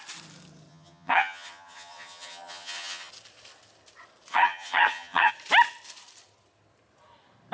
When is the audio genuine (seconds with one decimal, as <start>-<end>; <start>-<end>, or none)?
0.0-0.7; 3.1-4.3; 5.3-7.5